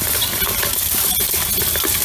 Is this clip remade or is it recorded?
recorded